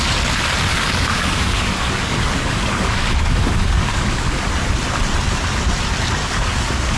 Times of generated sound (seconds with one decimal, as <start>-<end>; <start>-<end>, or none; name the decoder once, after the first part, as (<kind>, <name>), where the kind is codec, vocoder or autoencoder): 0.7-4.5 (codec, DAC); 6.2-7.0